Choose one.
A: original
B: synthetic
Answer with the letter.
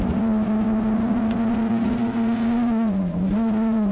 B